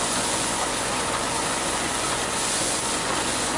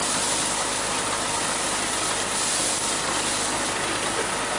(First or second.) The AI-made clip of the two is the first